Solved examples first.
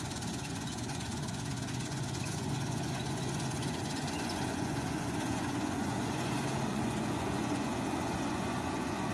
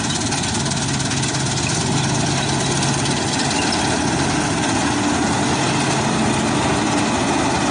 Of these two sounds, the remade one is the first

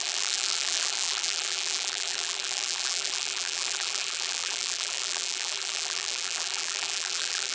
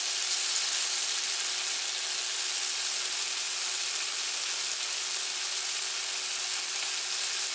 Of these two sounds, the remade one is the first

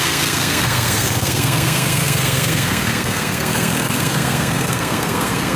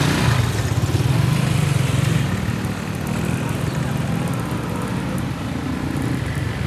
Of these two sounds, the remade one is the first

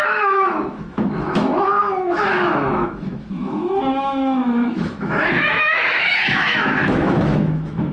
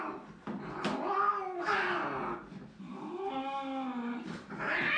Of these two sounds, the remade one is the first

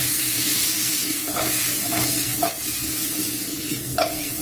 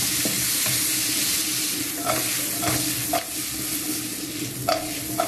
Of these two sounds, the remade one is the first